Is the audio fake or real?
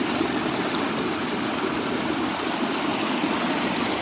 real